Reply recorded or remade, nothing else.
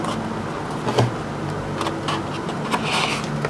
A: recorded